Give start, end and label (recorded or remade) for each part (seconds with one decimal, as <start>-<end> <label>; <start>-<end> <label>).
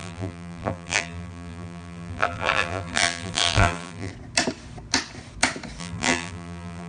0.0-4.1 remade; 4.1-5.8 recorded; 5.8-6.9 remade